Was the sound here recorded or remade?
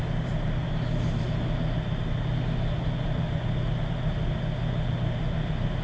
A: recorded